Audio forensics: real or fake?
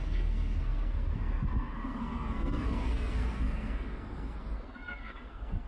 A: fake